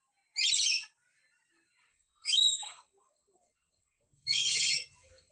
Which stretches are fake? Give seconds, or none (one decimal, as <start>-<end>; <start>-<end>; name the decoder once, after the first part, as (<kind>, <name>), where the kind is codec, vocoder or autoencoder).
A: 1.9-5.3 (codec, SNAC)